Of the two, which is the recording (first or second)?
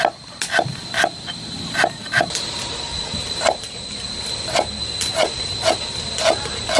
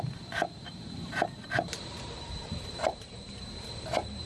first